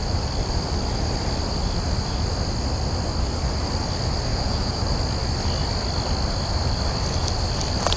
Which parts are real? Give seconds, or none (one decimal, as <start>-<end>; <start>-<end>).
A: 0.0-4.3; 4.8-8.0